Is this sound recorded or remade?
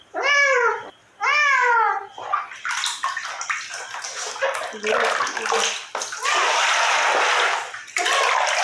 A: recorded